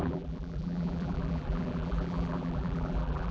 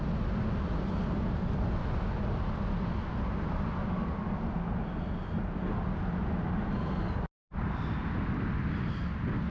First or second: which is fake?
first